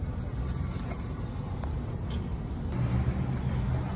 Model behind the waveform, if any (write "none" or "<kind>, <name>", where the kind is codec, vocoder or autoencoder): none